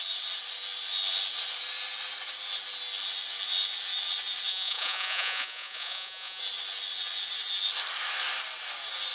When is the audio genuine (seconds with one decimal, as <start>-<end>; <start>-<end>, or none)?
0.0-4.5; 6.4-9.1